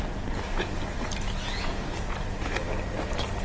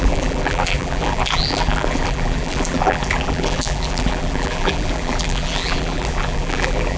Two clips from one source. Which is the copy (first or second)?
second